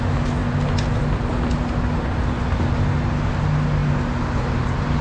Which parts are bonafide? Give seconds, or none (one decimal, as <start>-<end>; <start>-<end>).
0.0-5.0